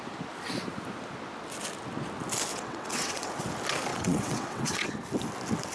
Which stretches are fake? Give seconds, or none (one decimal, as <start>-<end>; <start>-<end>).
2.5-3.3; 3.9-4.9